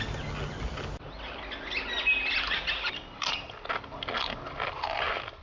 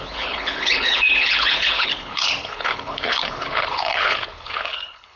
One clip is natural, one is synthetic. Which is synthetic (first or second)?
second